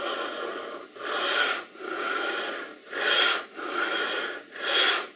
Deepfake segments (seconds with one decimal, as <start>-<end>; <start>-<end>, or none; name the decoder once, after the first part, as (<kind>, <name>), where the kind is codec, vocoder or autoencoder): 0.0-0.5 (vocoder, Vocos); 1.1-2.7; 3.2-5.2